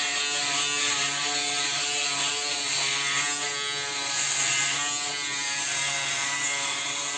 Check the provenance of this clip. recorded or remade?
recorded